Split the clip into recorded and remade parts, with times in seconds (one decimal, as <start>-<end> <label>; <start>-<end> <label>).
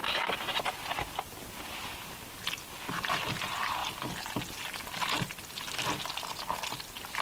0.0-1.3 remade; 1.3-7.2 recorded